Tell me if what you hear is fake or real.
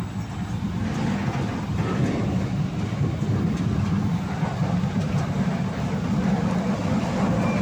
real